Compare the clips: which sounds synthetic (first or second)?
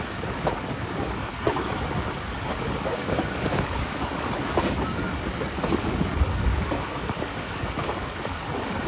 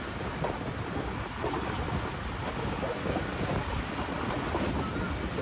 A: first